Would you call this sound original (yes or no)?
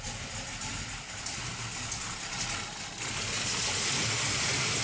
yes